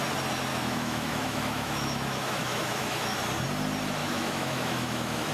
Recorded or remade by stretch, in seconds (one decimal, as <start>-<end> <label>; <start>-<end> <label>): 0.0-0.5 recorded; 0.5-3.2 remade; 3.2-4.0 recorded; 4.0-5.3 remade